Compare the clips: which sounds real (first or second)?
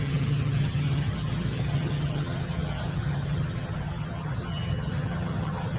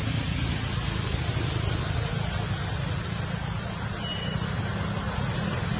second